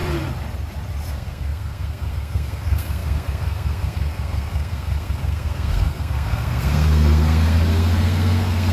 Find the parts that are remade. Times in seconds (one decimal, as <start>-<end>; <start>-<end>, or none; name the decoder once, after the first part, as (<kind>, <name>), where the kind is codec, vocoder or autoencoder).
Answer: 1.1-8.7 (codec, SNAC)